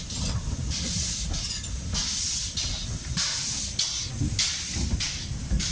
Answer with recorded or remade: recorded